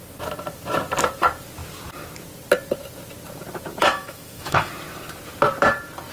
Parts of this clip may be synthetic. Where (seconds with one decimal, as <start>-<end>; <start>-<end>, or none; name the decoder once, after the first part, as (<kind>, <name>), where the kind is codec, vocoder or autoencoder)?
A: 3.8-4.7 (autoencoder, DAC-VAE)

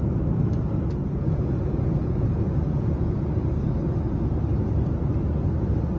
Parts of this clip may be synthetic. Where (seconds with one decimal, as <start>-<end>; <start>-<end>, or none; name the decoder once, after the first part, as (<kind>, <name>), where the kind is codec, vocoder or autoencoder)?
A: 1.0-3.2 (vocoder, Vocos)